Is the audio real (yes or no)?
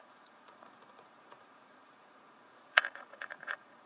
no